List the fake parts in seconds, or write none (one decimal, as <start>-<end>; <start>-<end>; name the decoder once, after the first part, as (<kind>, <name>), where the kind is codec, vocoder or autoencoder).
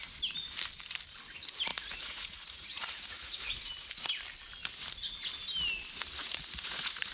1.7-3.7 (vocoder, Vocos); 6.2-7.1